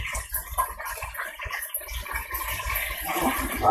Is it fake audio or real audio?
real